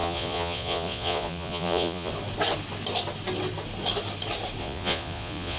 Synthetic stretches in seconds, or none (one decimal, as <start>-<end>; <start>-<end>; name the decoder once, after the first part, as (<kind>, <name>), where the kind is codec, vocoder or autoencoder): 0.0-2.1 (vocoder, Vocos); 4.6-5.6